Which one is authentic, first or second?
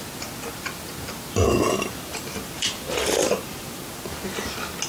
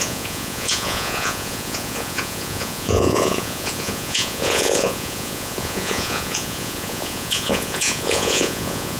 first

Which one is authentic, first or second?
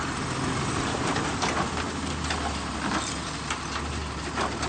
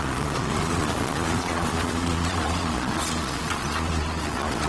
first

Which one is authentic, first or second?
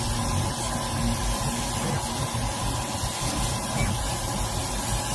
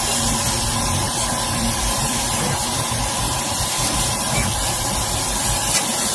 first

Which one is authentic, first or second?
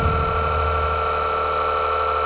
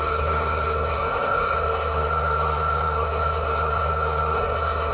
first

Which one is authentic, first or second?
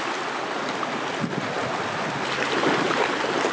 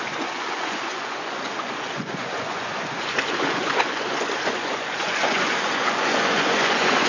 first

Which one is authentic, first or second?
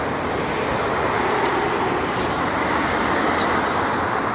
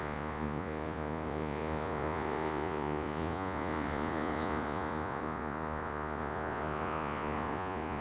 first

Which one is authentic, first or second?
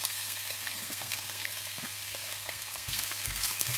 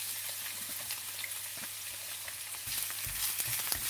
second